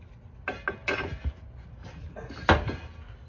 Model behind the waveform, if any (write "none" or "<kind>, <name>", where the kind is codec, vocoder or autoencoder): none